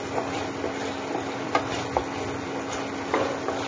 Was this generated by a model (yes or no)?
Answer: no